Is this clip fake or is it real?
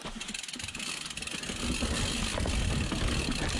real